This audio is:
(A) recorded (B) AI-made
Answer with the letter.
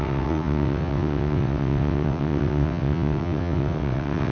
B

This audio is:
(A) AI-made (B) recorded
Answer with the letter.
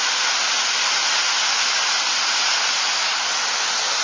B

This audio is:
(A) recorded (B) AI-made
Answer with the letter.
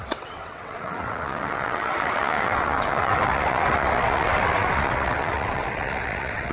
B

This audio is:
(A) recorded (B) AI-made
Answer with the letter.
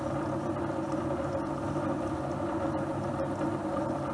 A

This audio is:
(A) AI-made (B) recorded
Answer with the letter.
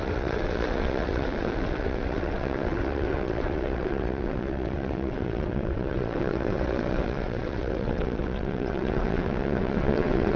A